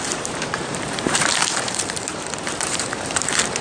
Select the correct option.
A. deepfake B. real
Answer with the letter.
A